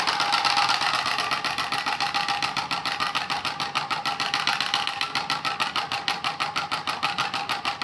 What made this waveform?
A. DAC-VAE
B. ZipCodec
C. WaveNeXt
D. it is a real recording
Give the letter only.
D